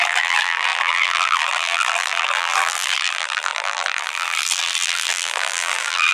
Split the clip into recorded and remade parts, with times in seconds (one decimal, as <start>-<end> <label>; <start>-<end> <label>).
0.0-6.1 remade